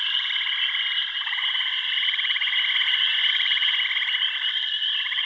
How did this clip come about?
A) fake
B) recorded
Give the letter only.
B